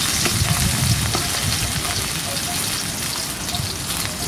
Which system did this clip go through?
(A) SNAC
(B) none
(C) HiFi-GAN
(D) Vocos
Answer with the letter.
B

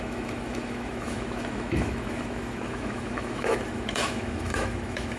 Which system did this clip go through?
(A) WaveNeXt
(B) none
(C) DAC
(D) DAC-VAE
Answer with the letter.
D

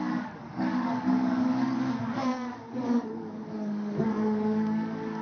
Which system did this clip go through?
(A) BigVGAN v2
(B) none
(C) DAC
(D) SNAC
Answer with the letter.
C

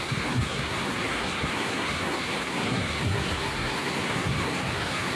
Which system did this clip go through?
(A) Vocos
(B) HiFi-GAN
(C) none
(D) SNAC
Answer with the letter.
D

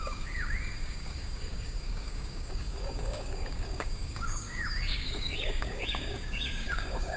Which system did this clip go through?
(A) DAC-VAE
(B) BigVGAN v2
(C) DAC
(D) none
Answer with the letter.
C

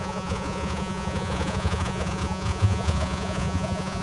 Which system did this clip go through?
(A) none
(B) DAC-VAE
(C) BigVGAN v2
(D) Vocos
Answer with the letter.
D